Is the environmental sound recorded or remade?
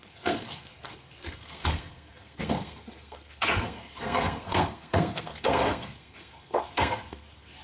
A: remade